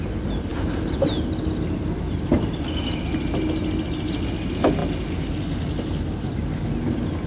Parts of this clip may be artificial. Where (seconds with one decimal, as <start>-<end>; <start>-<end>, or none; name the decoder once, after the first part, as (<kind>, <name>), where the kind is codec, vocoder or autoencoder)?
none

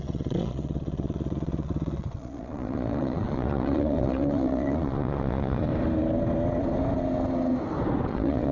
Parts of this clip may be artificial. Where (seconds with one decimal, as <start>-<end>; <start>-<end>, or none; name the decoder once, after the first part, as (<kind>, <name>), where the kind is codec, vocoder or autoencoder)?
0.0-5.7 (vocoder, Vocos); 8.1-8.5

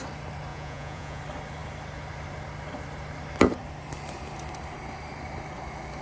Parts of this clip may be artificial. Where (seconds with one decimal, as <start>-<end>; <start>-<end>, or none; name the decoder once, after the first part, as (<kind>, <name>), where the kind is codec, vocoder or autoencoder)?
0.5-1.2 (vocoder, Vocos)

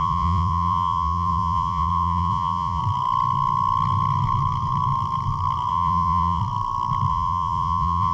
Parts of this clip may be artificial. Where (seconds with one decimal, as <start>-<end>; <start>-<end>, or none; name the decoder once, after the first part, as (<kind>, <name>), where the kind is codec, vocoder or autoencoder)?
0.0-2.8 (vocoder, Vocos); 5.7-6.4; 7.1-8.1

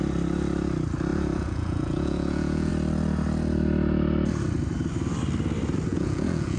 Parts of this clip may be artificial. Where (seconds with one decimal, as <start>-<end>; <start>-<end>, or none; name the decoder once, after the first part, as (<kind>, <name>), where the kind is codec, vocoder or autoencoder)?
1.1-2.7 (vocoder, Vocos); 5.9-6.6

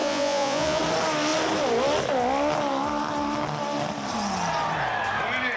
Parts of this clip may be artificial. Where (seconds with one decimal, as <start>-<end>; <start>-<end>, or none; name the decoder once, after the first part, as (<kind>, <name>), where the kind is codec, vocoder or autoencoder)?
0.0-0.8 (vocoder, Vocos)

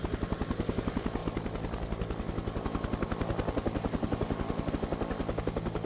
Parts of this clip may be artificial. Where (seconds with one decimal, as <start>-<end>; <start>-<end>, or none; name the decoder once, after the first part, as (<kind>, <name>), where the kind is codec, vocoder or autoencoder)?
none